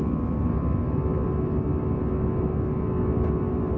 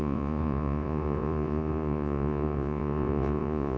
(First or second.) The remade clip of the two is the second